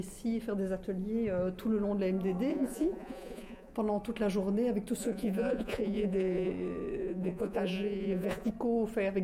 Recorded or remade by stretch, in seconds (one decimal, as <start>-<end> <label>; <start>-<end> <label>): 0.0-2.5 recorded; 2.5-3.7 remade; 3.7-5.0 recorded; 5.0-6.5 remade; 6.5-7.0 recorded; 7.0-8.5 remade; 8.5-9.2 recorded